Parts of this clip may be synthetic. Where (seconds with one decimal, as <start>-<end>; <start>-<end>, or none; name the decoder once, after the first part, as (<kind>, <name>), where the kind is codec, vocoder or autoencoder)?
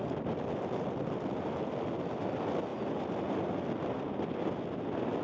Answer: none